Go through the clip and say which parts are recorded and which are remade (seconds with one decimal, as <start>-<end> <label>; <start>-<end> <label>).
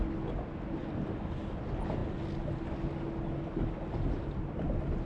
0.0-5.1 recorded